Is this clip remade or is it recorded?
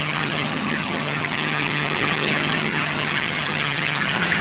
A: remade